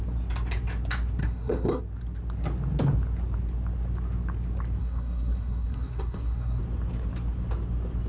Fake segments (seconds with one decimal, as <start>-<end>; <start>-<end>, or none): 1.2-1.8; 4.8-6.6